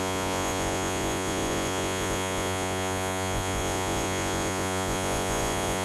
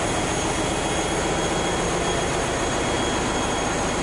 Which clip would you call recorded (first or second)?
second